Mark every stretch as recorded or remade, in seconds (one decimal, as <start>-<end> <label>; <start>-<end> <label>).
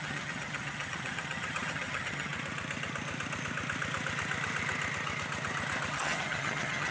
0.0-2.3 remade; 2.3-5.9 recorded; 5.9-6.9 remade